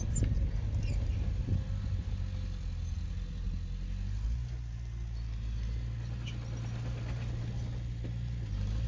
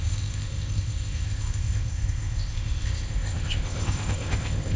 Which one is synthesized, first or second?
second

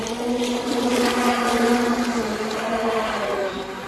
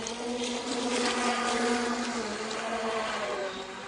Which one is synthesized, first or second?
first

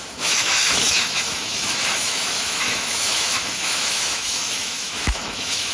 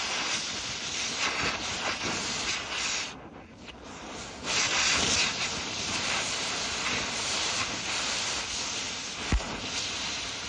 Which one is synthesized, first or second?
first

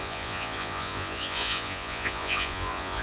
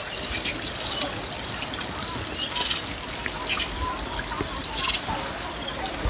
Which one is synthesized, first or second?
first